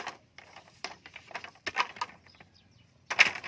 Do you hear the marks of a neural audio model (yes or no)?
no